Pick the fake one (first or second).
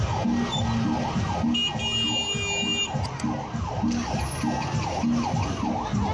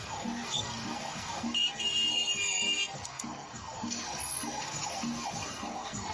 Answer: second